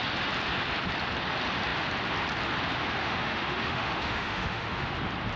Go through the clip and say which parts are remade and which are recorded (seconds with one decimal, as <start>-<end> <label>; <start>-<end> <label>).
0.0-3.0 recorded; 3.0-4.9 remade; 4.9-5.4 recorded